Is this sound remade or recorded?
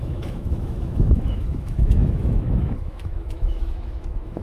remade